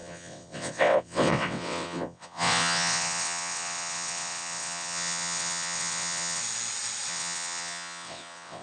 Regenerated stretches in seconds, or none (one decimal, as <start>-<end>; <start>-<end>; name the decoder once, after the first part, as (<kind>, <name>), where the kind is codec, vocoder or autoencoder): 0.0-6.4 (vocoder, WaveNeXt); 7.1-8.6